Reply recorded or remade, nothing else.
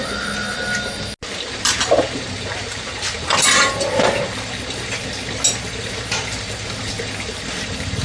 recorded